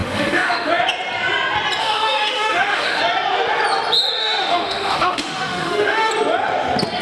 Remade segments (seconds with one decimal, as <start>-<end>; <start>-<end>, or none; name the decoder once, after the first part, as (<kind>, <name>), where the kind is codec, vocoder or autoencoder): 0.0-0.7 (autoencoder, DAC-VAE); 1.8-3.0; 4.2-6.1